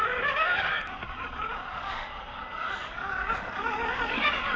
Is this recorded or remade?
remade